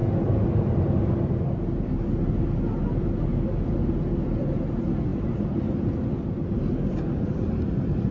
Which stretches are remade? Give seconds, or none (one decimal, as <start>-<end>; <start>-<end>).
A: none